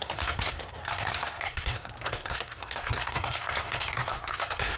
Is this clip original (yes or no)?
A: no